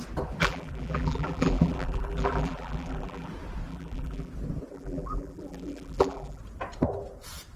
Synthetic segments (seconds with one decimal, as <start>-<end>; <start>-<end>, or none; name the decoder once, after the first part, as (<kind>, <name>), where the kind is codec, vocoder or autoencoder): 0.4-3.3 (vocoder, BigVGAN v2); 3.7-4.3; 4.7-6.4